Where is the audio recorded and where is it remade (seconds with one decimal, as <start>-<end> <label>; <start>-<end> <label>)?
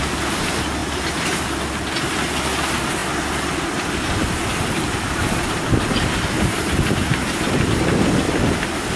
0.0-0.8 recorded; 0.8-1.5 remade; 1.5-4.5 recorded; 4.5-6.6 remade; 6.6-9.0 recorded